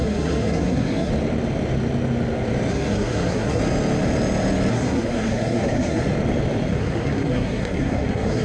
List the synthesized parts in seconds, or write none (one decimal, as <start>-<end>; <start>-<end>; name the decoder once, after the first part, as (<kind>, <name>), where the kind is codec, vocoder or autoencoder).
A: 0.0-1.1 (codec, SNAC); 2.7-3.6; 4.7-6.0; 6.7-8.4